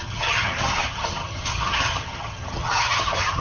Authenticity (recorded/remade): remade